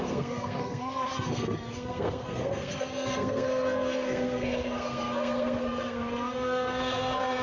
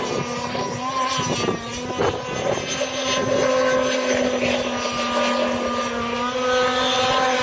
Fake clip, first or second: first